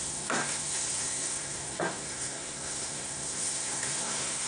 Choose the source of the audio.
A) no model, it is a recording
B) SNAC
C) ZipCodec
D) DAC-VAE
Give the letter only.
B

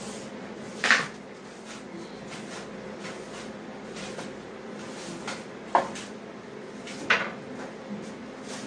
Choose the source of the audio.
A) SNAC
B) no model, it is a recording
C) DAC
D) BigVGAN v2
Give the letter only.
B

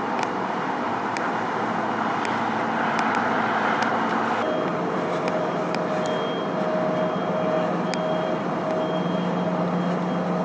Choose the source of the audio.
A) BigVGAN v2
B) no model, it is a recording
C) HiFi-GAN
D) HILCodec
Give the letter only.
B